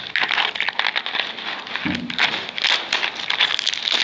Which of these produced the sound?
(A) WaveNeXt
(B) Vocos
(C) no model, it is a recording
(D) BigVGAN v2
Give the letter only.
C